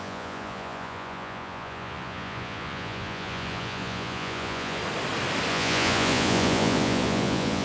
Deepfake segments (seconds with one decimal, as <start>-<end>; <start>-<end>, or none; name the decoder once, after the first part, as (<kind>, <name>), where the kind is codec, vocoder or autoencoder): 0.0-4.8 (vocoder, Vocos); 5.5-7.6